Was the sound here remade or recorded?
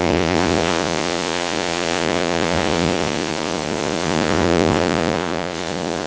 remade